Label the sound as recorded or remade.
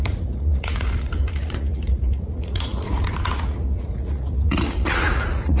remade